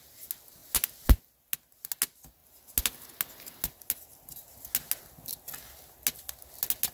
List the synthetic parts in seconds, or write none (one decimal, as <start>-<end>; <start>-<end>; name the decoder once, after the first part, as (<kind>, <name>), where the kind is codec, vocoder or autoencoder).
none